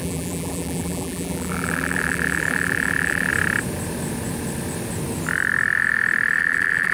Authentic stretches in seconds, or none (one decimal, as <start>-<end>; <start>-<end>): 3.3-6.4